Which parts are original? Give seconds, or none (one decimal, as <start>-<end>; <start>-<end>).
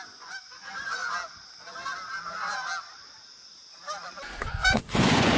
1.0-4.2